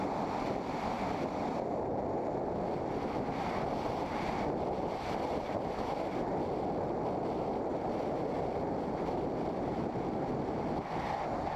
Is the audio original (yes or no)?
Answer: yes